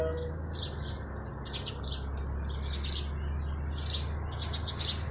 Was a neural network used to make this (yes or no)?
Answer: no